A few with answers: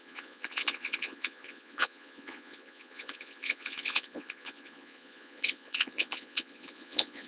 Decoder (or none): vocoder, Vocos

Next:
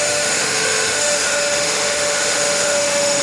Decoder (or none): autoencoder, DAC-VAE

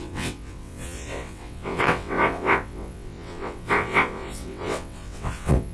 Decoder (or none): vocoder, WaveNeXt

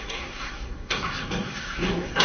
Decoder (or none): codec, SNAC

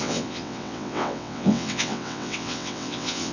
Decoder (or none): vocoder, WaveNeXt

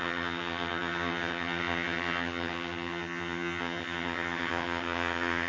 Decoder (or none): vocoder, HiFi-GAN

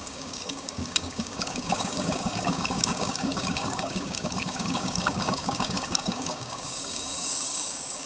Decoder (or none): codec, DAC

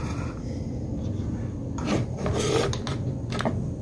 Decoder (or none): none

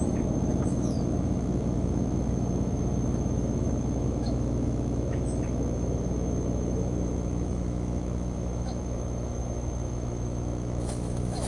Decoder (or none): autoencoder, DAC-VAE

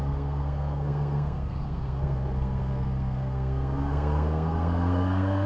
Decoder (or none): codec, SNAC